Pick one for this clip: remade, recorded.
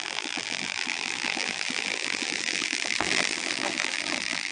remade